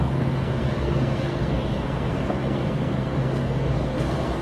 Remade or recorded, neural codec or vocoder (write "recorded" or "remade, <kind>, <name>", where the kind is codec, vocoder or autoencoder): remade, codec, SNAC